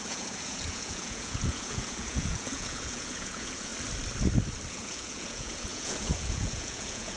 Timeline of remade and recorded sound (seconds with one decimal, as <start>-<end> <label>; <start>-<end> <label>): 0.0-3.7 remade; 3.7-4.7 recorded; 4.7-7.2 remade